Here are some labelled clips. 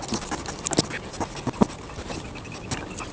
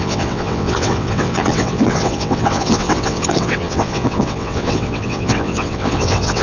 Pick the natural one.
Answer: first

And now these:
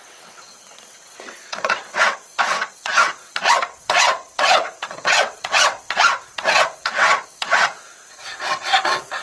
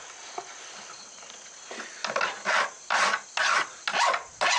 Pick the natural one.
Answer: second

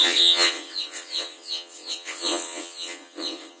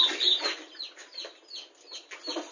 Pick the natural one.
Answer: second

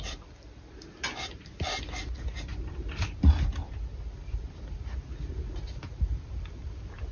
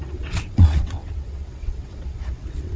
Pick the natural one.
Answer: first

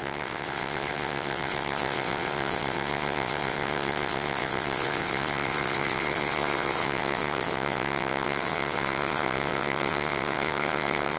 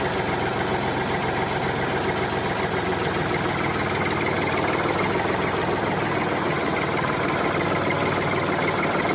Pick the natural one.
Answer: second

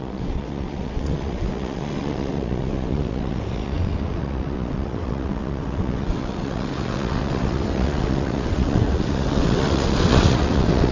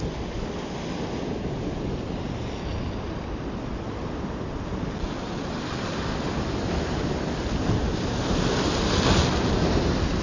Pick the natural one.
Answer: second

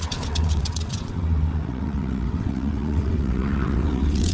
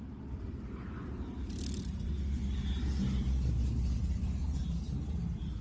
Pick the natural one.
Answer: second